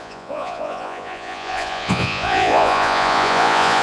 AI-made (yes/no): yes